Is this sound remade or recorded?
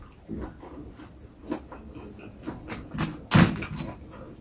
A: recorded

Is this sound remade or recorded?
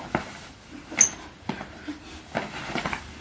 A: recorded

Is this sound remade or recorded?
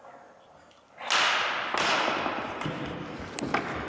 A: recorded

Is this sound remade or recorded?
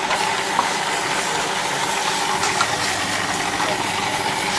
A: recorded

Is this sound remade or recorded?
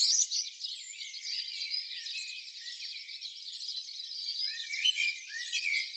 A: remade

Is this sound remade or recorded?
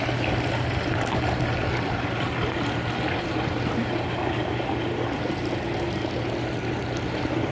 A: recorded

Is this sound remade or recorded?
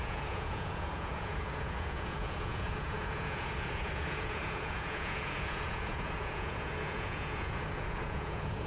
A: remade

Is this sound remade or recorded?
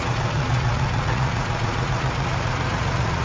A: remade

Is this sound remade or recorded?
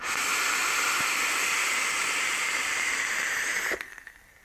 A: recorded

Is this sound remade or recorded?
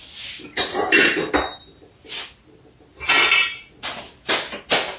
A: recorded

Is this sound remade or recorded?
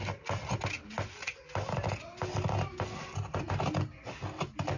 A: recorded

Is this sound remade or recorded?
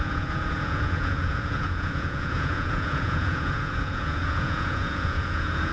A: remade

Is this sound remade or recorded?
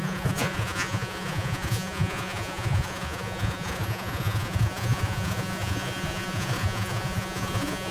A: remade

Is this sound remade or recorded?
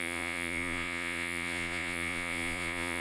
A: remade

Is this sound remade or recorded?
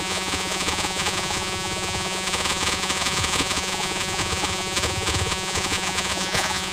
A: remade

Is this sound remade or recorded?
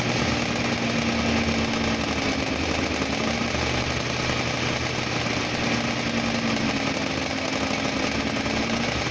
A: recorded